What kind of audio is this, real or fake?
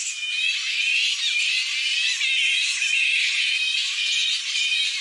real